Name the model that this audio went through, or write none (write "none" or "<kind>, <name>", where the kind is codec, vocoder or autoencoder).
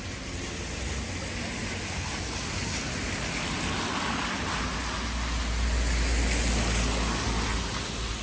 none